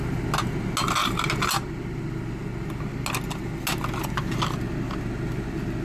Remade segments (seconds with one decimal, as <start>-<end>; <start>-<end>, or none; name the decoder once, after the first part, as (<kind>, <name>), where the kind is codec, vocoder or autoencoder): none